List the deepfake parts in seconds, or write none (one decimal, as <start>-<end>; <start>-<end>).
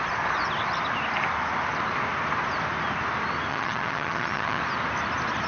3.5-4.6